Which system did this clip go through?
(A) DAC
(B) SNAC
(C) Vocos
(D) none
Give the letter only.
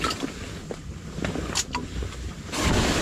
D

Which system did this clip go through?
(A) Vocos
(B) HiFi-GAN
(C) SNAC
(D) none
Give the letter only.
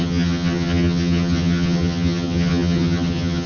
B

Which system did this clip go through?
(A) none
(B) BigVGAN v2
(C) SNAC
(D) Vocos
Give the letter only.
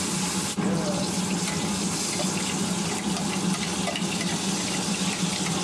A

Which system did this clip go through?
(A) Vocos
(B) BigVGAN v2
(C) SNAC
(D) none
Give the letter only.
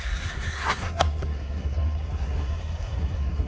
C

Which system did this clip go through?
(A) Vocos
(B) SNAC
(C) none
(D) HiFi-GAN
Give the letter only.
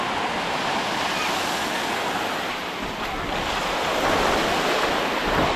C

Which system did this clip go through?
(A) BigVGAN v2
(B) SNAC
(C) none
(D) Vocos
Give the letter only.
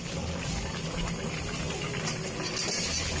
C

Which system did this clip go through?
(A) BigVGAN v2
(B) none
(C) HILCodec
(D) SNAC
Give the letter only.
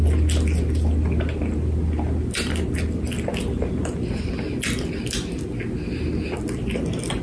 B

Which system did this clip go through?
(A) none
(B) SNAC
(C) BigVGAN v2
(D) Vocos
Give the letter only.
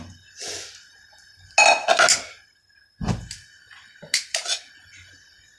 A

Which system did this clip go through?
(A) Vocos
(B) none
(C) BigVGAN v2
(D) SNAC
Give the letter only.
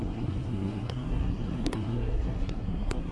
D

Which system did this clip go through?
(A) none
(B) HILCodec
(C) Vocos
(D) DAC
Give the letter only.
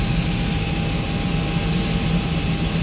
A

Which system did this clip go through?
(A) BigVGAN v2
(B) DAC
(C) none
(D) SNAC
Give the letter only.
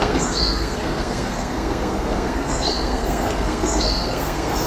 D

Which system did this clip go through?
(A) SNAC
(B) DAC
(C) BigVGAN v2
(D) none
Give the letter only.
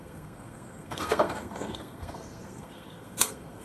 A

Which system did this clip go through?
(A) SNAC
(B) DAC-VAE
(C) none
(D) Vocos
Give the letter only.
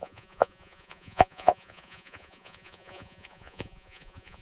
D